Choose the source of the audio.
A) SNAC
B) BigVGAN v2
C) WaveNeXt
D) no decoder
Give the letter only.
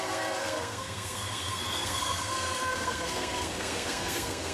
A